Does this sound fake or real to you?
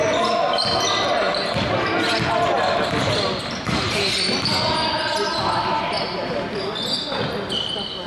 real